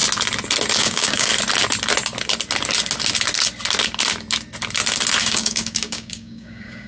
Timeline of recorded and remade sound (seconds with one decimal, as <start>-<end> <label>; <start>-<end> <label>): 0.0-0.8 recorded; 0.8-1.3 remade; 1.3-5.2 recorded; 5.2-6.9 remade